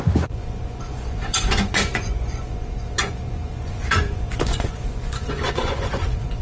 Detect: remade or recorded remade